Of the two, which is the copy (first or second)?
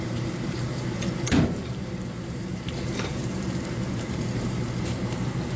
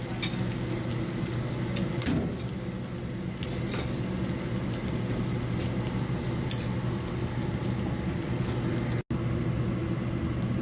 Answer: first